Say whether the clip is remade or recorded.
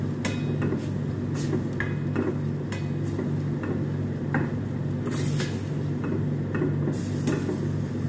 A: recorded